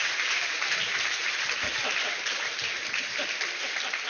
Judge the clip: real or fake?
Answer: real